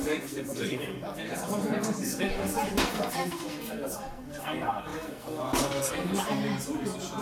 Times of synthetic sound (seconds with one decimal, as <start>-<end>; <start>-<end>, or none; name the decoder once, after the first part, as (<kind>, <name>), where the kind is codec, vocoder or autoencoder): 0.0-6.4 (codec, SNAC)